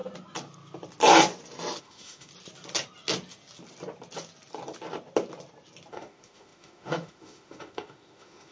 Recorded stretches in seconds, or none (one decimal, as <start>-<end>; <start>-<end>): 0.0-1.8; 2.3-5.9